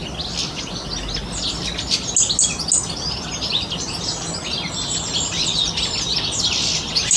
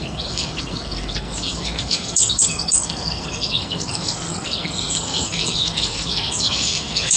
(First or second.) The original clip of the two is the first